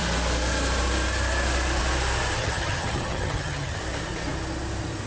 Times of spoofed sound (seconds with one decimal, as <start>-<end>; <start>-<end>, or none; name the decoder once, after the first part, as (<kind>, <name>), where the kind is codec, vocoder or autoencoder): 2.4-3.8 (vocoder, HiFi-GAN)